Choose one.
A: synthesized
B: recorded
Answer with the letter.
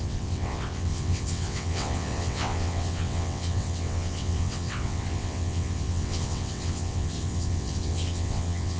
A